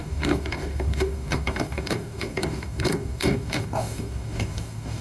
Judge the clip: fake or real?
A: fake